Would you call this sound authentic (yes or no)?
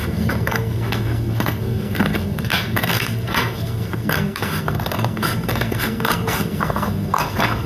no